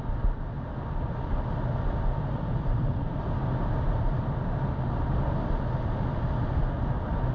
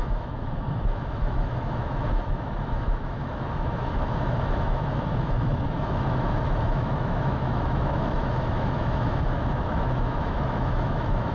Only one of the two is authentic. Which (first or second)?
first